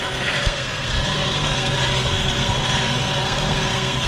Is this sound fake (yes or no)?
yes